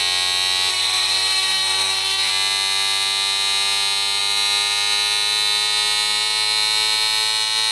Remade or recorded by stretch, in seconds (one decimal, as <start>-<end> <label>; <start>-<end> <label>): 0.0-0.7 recorded; 0.7-2.3 remade; 2.3-7.7 recorded